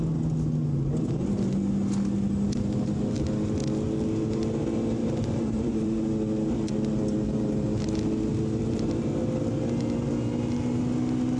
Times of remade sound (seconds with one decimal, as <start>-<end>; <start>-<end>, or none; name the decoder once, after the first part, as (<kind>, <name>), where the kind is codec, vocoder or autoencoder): 5.0-6.0 (vocoder, BigVGAN v2)